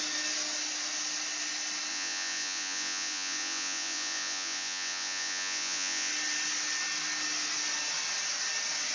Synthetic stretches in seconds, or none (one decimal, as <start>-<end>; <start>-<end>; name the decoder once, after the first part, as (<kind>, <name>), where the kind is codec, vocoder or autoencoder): 1.9-6.1 (vocoder, Vocos)